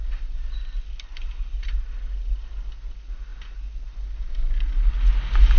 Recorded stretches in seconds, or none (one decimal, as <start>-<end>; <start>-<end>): 0.0-5.6